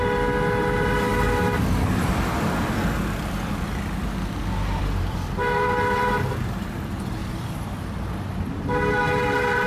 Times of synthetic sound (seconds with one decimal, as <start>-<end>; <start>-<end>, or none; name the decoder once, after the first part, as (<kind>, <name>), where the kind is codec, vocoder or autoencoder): 0.0-1.1 (vocoder, BigVGAN v2); 4.8-7.2; 8.0-9.7